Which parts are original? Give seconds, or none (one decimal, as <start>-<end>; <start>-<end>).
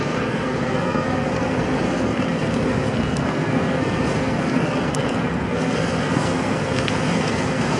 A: none